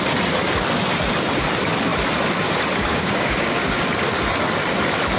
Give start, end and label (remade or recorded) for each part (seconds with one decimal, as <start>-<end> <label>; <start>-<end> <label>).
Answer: 0.0-2.9 recorded; 2.9-3.9 remade; 3.9-5.2 recorded

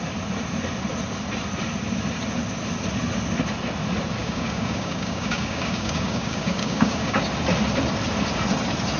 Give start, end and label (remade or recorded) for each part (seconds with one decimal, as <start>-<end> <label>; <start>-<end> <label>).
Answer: 0.0-4.2 recorded; 4.2-7.2 remade; 7.2-9.0 recorded

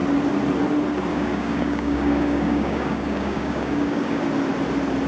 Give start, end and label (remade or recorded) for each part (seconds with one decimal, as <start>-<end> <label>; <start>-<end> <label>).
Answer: 0.0-1.1 recorded; 1.1-4.2 remade; 4.2-5.1 recorded

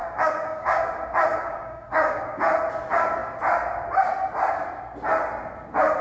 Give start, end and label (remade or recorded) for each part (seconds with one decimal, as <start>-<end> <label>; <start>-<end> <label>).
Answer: 0.0-0.8 remade; 0.8-1.3 recorded; 1.3-2.4 remade; 2.4-6.0 recorded

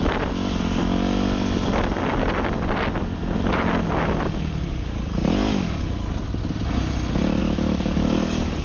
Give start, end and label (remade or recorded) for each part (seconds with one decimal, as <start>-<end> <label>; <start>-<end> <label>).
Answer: 0.0-7.4 recorded; 7.4-8.6 remade

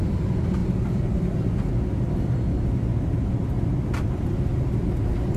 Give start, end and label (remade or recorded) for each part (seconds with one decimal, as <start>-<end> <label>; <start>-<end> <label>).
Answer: 0.0-5.4 recorded